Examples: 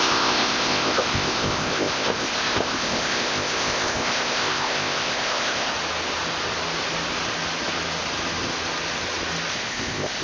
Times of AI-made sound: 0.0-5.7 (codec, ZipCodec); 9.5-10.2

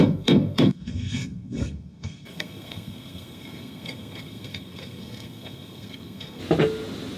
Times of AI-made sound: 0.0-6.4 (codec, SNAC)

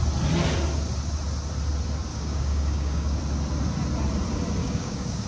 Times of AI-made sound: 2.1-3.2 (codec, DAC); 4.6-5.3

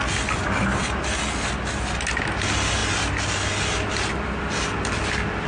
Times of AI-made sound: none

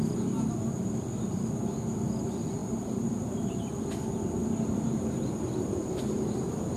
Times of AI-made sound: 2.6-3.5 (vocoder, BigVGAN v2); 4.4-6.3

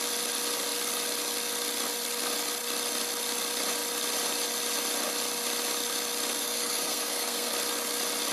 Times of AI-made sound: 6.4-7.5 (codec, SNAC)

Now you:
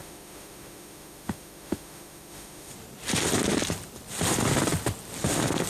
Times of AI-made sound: 0.0-2.7 (autoencoder, DAC-VAE)